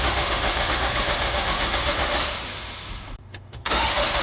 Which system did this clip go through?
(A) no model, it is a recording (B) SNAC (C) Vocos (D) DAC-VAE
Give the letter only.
D